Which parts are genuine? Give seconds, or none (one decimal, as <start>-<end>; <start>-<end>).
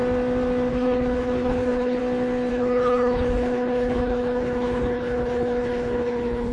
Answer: 0.0-0.7; 2.0-2.5